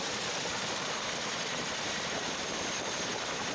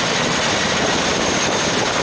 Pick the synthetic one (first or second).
first